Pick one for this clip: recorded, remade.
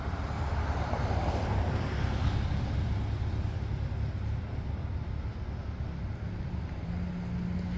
recorded